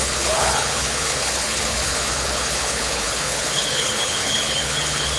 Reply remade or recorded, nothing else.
remade